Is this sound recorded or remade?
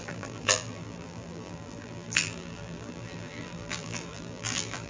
remade